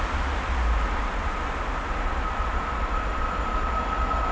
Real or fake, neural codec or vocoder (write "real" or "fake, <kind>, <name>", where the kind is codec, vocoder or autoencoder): real